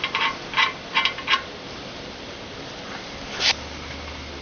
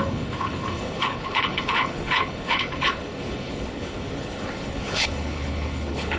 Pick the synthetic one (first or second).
second